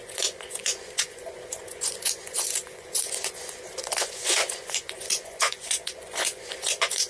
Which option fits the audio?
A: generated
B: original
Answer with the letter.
A